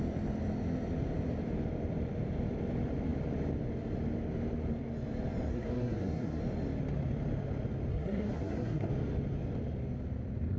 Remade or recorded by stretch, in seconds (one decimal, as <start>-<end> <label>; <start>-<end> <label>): 0.0-5.5 recorded; 5.5-6.4 remade; 6.4-7.9 recorded; 7.9-8.9 remade; 8.9-10.6 recorded